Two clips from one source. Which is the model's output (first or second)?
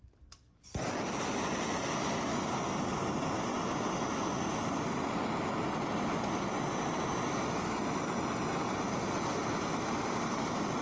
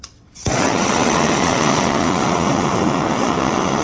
second